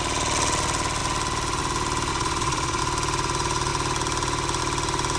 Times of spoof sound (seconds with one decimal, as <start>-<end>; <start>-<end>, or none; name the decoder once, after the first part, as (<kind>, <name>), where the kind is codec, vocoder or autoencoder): 2.1-2.8 (vocoder, Vocos)